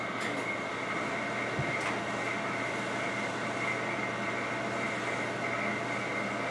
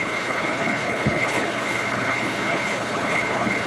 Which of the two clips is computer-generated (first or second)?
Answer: second